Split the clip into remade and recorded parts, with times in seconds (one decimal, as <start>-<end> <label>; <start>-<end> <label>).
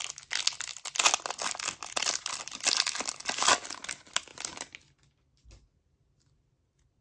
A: 0.0-7.0 recorded